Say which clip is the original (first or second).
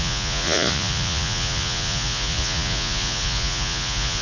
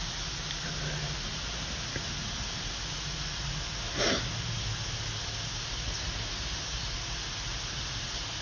second